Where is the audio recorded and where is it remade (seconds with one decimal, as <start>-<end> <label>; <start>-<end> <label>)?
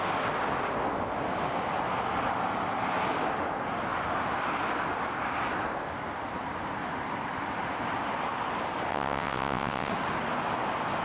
0.0-8.9 recorded; 8.9-9.9 remade; 9.9-11.0 recorded